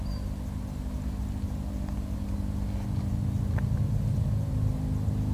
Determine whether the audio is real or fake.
real